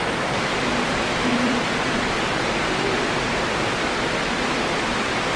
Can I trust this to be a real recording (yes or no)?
no